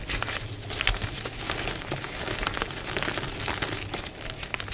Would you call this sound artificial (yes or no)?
no